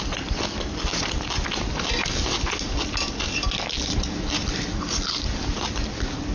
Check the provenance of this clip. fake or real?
real